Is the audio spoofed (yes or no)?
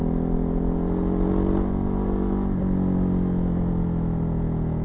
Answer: no